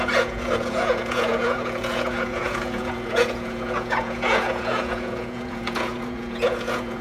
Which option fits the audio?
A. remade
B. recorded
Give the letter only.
A